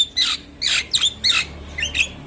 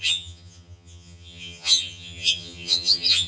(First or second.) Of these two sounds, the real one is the first